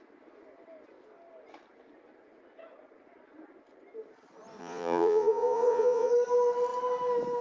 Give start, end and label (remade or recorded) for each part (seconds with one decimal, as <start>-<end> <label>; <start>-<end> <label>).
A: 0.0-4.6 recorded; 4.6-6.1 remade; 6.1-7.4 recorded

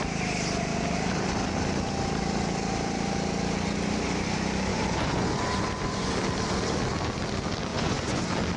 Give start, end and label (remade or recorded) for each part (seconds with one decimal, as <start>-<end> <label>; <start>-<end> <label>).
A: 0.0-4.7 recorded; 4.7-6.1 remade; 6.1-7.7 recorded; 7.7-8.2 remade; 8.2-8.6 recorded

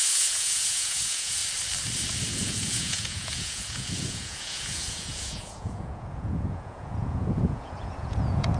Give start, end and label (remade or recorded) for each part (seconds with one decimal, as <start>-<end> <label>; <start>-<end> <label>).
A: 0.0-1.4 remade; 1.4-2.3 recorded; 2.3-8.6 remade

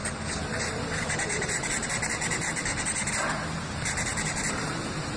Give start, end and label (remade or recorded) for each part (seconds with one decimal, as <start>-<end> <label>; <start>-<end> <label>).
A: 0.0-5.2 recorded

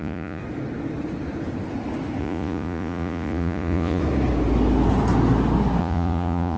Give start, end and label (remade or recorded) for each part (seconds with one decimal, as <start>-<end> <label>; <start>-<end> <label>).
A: 0.0-0.4 remade; 0.4-2.2 recorded; 2.2-4.0 remade; 4.0-5.8 recorded; 5.8-6.6 remade

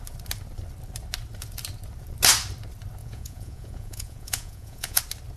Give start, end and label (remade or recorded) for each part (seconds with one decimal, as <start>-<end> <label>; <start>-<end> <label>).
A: 0.0-3.0 recorded; 3.0-5.0 remade; 5.0-5.4 recorded

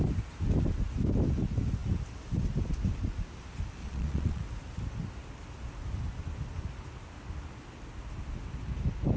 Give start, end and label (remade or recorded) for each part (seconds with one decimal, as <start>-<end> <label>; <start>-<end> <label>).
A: 0.0-3.8 recorded; 3.8-4.4 remade; 4.4-9.2 recorded

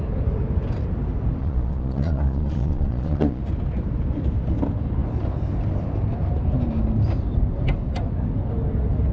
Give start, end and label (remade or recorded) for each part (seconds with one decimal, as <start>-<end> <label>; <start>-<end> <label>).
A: 0.0-1.4 recorded; 1.4-3.4 remade; 3.4-9.1 recorded